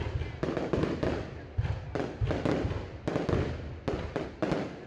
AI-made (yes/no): no